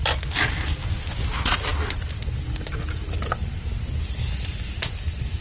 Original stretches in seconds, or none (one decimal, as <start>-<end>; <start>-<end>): 0.0-5.4